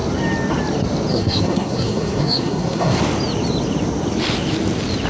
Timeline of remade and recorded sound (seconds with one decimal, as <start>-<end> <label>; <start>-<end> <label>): 0.0-1.1 recorded; 1.1-3.0 remade; 3.0-5.1 recorded